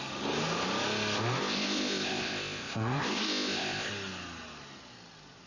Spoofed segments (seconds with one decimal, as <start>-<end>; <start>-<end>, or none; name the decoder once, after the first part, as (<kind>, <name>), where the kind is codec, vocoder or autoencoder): 1.4-3.9 (codec, ZipCodec)